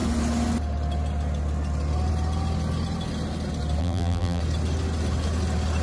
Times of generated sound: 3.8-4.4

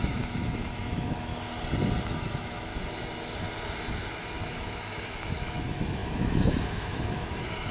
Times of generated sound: 0.0-1.3; 2.0-2.7; 4.5-7.7

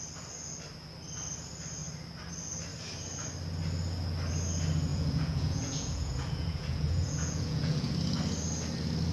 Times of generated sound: 4.9-7.9

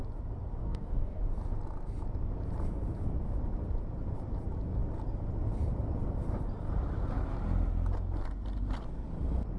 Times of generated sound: 0.6-1.2